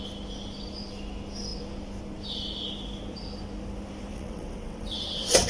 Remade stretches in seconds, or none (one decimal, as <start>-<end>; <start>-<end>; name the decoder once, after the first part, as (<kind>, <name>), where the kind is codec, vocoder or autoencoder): 4.1-5.5 (vocoder, WaveNeXt)